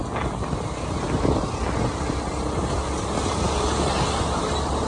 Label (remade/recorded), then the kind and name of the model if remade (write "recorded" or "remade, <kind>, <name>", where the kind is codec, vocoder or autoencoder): recorded